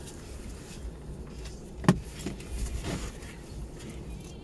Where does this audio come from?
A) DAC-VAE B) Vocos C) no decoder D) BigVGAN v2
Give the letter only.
C